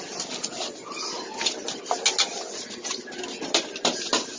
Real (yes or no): yes